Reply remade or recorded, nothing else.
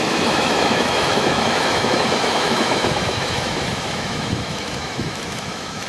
remade